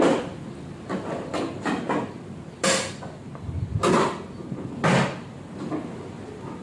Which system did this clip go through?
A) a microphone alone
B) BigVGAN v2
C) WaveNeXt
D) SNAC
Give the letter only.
A